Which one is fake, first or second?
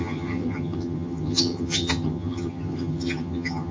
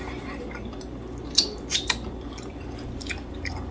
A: first